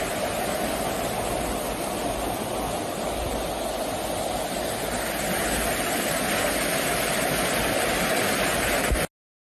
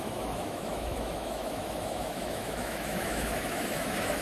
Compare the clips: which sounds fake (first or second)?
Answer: second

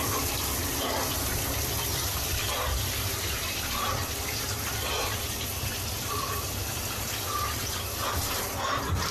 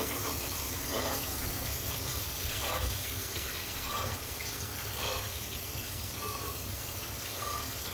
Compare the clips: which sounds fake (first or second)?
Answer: second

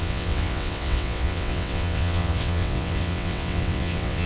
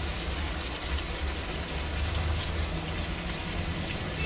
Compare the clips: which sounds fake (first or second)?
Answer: first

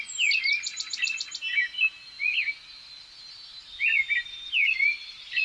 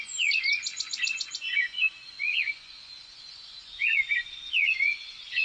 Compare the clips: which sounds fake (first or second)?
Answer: second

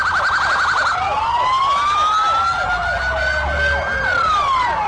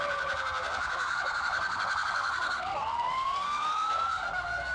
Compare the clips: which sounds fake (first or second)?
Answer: second